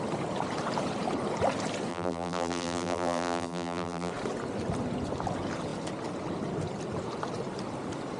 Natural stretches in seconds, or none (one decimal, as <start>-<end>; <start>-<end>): 0.0-1.9; 4.1-8.2